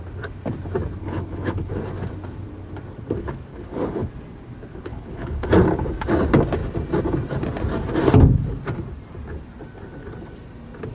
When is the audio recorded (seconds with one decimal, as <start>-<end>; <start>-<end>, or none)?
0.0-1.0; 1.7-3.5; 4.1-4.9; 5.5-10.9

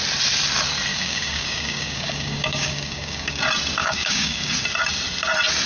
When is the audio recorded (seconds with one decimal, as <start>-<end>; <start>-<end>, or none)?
0.0-0.9; 3.4-3.8; 4.5-5.7

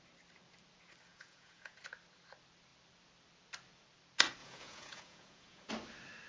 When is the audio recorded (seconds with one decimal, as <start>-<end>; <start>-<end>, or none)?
0.0-1.1; 1.8-4.4; 5.7-6.3

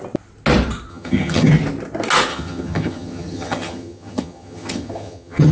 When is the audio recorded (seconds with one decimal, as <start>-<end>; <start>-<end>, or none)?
0.0-0.9; 1.5-2.3